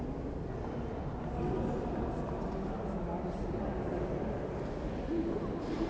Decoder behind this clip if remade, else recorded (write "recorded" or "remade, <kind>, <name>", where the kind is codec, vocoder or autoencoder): recorded